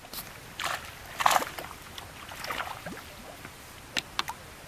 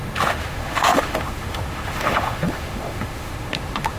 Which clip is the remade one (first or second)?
second